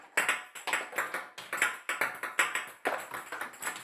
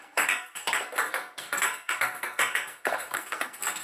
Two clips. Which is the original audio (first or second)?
first